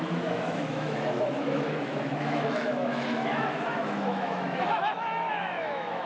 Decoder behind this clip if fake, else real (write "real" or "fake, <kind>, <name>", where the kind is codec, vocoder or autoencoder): fake, autoencoder, DAC-VAE